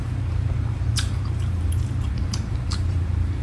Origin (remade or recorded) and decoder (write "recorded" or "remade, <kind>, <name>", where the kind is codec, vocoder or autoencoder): remade, vocoder, BigVGAN v2